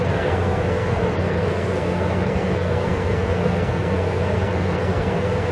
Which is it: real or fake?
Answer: fake